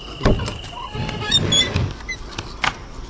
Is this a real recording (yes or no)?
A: yes